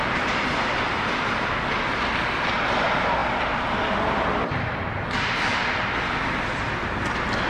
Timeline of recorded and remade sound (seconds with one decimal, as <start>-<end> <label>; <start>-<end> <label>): 0.0-1.1 remade; 1.1-3.2 recorded; 3.2-5.9 remade; 5.9-7.5 recorded